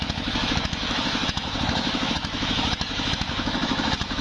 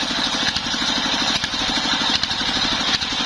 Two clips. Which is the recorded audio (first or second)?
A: second